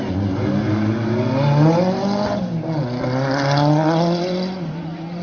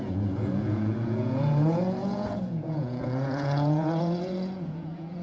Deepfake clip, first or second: second